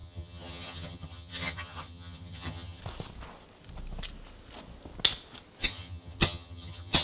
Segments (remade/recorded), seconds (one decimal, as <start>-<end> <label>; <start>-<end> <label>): 0.0-2.8 remade; 2.8-5.6 recorded; 5.6-7.0 remade